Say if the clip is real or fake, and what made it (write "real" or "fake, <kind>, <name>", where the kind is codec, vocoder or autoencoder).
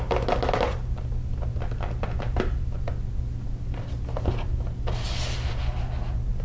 real